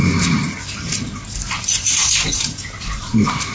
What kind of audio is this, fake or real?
fake